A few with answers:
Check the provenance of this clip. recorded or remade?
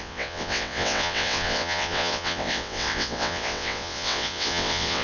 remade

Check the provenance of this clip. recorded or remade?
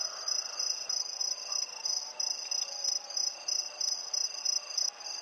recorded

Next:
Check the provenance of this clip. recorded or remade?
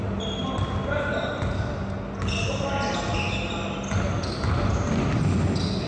recorded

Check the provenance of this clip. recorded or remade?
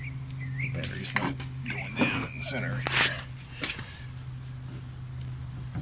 remade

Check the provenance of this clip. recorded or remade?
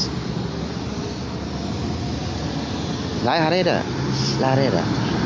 recorded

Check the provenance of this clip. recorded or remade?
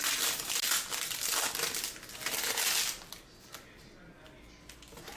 recorded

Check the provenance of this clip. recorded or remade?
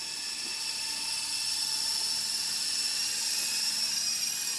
recorded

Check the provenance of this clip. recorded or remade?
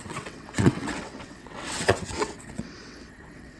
remade